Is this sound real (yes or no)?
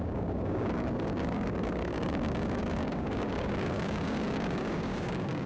no